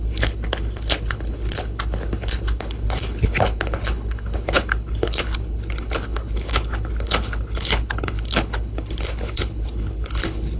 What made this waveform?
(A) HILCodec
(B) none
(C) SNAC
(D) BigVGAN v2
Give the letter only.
A